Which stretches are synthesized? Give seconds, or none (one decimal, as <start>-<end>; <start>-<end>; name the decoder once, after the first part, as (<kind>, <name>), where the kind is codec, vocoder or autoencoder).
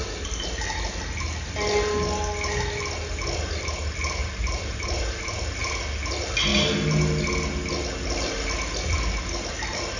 4.2-5.0 (vocoder, BigVGAN v2)